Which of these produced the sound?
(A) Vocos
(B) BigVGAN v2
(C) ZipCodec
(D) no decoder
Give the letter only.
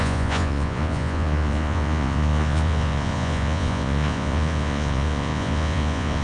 A